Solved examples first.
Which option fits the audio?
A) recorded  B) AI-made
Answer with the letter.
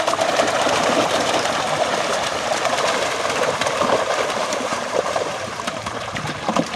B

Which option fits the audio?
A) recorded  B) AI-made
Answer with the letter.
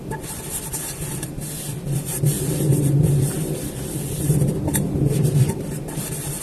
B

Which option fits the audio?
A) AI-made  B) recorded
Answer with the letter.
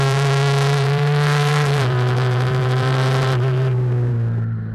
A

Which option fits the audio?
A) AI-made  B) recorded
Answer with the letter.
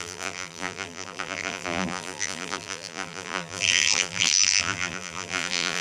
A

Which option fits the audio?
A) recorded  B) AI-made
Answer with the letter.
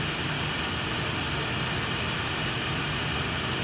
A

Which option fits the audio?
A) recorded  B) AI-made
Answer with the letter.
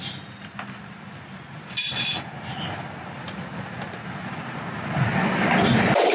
A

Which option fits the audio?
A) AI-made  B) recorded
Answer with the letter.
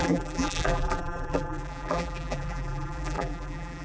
A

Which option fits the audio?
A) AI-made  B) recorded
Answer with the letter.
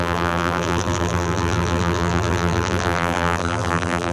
A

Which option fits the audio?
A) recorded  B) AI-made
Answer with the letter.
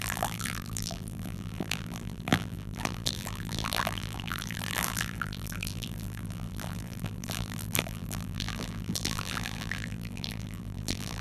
B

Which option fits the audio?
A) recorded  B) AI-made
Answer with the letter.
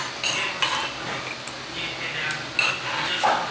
A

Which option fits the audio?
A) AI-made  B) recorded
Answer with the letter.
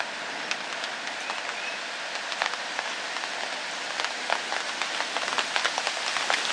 B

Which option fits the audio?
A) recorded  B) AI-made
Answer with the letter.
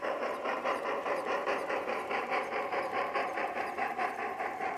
B